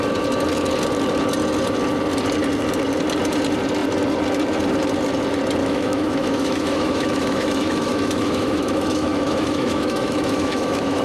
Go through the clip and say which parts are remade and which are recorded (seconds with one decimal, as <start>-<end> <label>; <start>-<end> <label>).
0.0-5.6 recorded; 5.6-11.0 remade